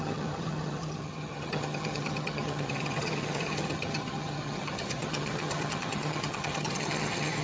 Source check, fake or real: fake